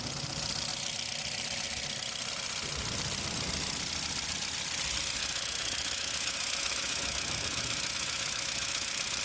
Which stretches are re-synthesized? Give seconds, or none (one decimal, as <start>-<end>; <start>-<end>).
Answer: 5.2-9.2